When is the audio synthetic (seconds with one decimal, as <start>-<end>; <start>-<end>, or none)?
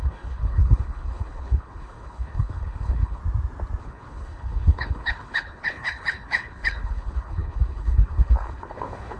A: 0.0-3.2; 3.8-9.2